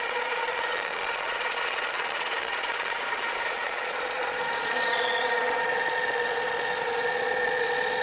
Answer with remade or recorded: remade